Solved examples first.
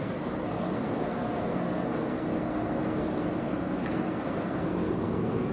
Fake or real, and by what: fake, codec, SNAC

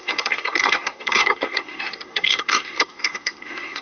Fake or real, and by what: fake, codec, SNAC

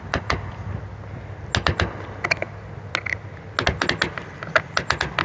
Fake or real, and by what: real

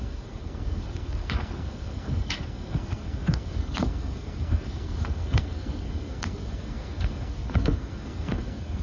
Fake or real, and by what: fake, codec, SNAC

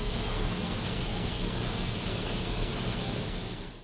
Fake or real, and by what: fake, codec, SNAC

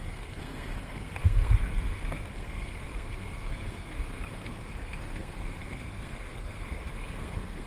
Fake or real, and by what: fake, codec, SNAC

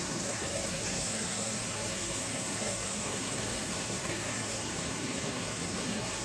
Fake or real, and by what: fake, codec, SNAC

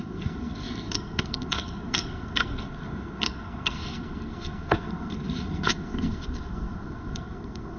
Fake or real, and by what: fake, codec, SNAC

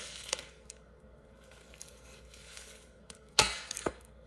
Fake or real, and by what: fake, codec, SNAC